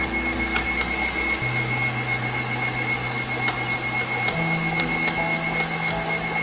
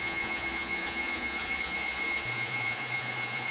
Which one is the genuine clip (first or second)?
first